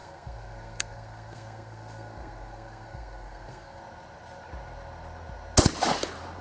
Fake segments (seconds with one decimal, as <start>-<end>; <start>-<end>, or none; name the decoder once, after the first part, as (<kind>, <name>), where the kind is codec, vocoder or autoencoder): 0.0-3.8 (codec, SNAC)